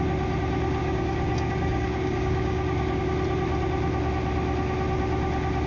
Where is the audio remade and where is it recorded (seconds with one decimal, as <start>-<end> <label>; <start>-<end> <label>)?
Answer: 0.0-0.8 recorded; 0.8-3.0 remade; 3.0-5.7 recorded